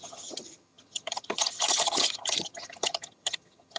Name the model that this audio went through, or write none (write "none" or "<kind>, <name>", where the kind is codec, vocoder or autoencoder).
vocoder, HiFi-GAN